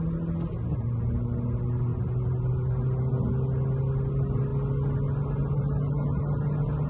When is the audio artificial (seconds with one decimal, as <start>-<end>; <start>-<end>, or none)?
none